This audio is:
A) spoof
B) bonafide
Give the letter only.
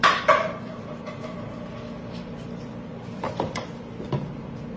A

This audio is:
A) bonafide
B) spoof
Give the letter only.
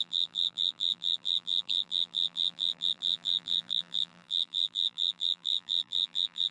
B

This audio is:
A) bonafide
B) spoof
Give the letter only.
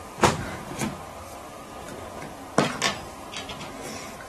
A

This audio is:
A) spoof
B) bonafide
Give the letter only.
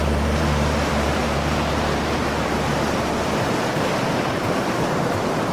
A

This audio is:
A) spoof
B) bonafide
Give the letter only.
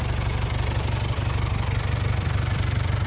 A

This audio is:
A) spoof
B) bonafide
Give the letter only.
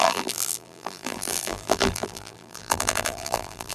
A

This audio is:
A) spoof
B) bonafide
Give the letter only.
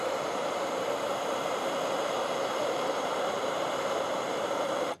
A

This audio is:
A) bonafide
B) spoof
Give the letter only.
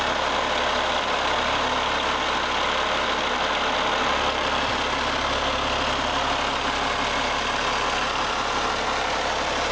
B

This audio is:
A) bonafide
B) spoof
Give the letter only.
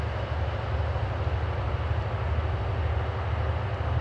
A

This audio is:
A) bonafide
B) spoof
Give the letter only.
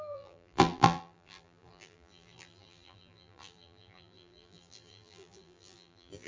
B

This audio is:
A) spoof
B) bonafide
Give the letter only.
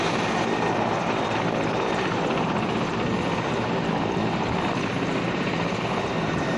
A